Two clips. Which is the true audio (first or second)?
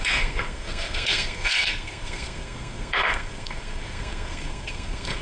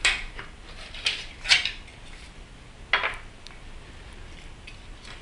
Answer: second